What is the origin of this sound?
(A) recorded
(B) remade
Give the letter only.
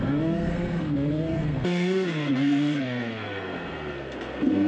B